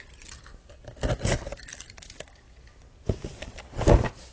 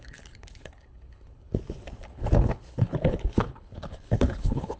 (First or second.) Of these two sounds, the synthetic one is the second